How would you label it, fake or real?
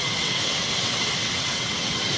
fake